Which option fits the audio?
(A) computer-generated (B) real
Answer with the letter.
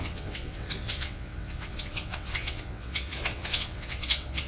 A